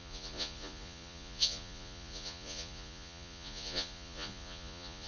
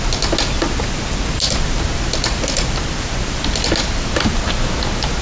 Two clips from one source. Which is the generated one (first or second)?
first